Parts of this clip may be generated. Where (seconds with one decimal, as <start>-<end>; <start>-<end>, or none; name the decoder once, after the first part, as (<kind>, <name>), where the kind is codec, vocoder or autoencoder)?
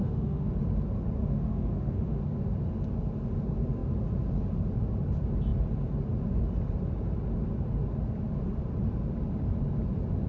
0.0-0.5 (autoencoder, DAC-VAE); 1.2-2.2